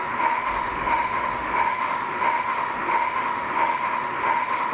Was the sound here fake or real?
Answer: fake